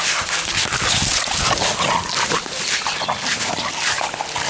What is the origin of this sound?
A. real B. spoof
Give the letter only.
A